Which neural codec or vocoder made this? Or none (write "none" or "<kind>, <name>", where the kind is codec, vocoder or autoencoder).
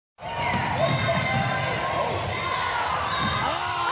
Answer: none